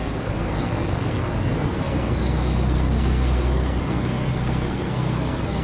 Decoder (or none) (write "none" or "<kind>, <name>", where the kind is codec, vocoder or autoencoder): codec, SNAC